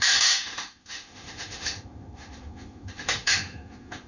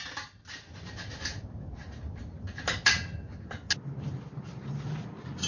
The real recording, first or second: second